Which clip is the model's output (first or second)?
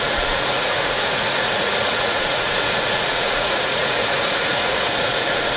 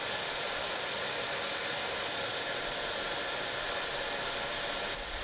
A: first